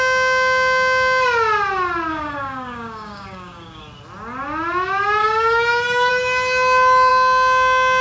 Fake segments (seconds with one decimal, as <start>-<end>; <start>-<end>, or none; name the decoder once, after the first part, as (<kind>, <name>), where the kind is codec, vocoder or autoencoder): 2.1-3.8 (codec, DAC); 5.2-6.1